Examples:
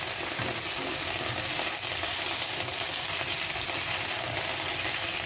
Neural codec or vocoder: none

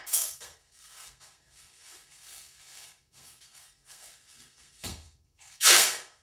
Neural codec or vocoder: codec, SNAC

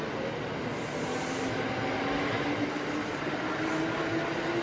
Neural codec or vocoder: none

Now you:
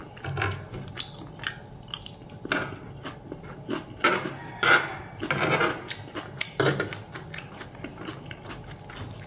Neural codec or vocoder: none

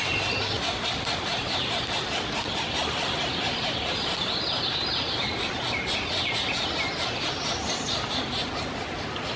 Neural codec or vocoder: none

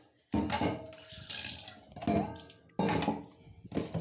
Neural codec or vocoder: none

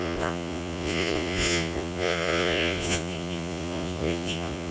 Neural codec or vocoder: vocoder, Vocos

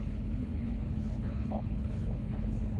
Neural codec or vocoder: codec, HILCodec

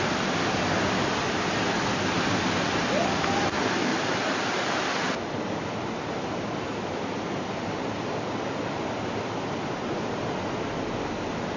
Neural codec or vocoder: none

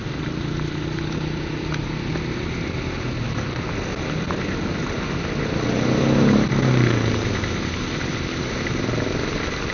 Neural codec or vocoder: none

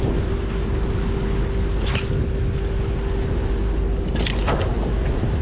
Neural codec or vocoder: none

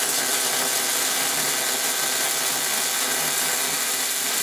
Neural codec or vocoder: none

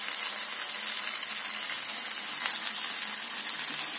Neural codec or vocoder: none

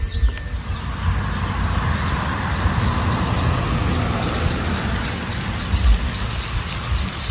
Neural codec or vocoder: none